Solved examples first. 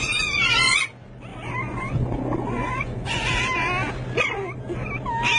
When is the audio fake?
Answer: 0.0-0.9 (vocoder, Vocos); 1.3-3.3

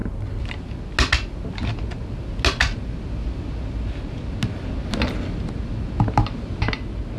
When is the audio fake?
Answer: none

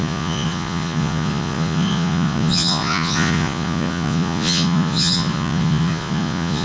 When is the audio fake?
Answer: 0.0-6.6 (vocoder, Vocos)